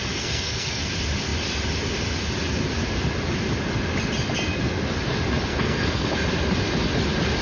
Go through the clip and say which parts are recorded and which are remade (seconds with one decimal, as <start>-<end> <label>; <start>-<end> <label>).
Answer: 0.0-0.9 remade; 0.9-5.5 recorded; 5.5-6.1 remade; 6.1-7.4 recorded